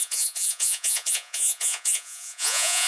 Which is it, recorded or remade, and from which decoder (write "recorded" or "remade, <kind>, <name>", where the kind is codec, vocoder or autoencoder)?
remade, vocoder, Vocos